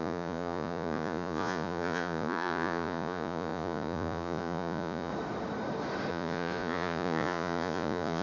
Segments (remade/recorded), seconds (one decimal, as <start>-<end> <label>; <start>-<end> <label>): 0.0-5.1 remade; 5.1-6.1 recorded; 6.1-8.2 remade

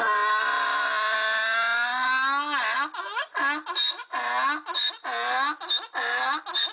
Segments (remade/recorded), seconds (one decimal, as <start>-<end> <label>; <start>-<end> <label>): 0.0-6.7 recorded

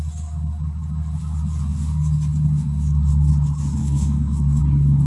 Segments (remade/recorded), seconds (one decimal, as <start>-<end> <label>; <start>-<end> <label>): 0.0-3.8 recorded; 3.8-4.6 remade; 4.6-5.1 recorded

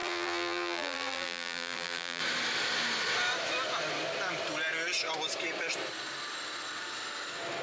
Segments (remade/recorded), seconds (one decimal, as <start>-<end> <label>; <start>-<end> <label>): 0.0-2.2 remade; 2.2-7.6 recorded

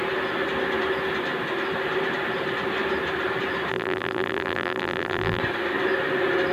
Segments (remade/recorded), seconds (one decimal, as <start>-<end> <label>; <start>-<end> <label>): 0.0-3.7 recorded; 3.7-5.4 remade; 5.4-6.5 recorded

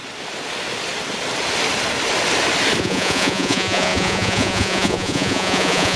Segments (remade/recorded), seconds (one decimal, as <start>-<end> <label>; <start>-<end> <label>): 0.0-2.8 recorded; 2.8-6.0 remade